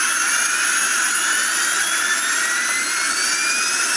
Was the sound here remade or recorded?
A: recorded